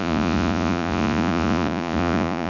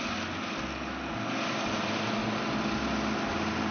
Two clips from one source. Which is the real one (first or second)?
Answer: second